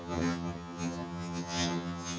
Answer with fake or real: fake